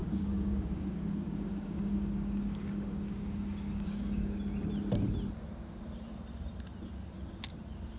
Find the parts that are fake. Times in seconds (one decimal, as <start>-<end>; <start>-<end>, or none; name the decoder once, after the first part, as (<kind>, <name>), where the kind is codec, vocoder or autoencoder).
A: 0.0-4.4 (codec, DAC)